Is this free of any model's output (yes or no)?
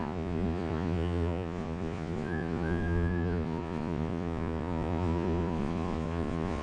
no